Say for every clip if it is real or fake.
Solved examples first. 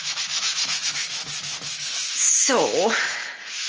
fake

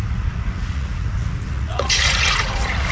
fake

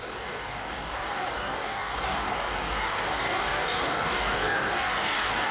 fake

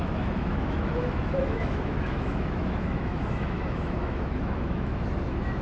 fake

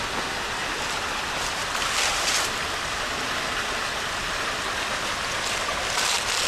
real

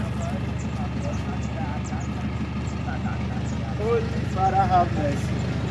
real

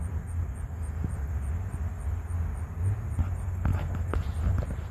real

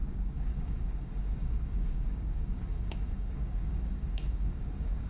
fake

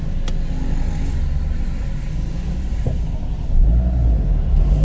real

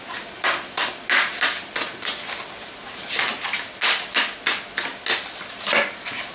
real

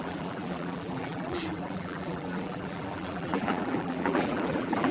fake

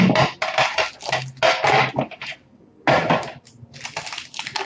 real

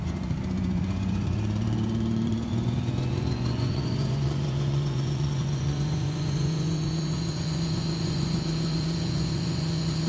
fake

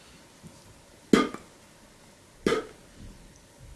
real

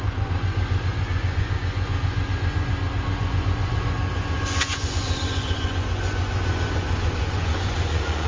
fake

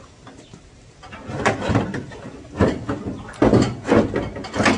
real